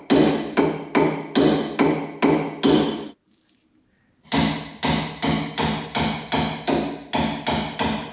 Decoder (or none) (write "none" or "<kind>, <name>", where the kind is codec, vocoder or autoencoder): none